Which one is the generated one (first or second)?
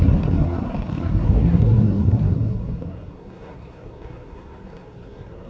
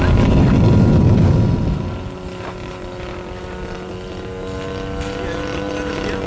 first